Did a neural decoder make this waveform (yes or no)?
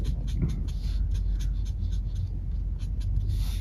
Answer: no